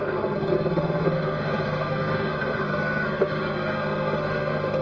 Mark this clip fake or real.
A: fake